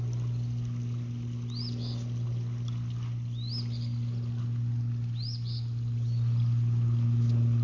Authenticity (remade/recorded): recorded